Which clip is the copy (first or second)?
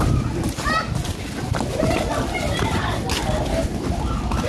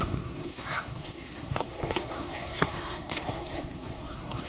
second